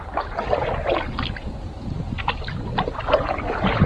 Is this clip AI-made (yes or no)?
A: no